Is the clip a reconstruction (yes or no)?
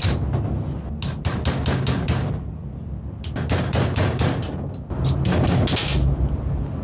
no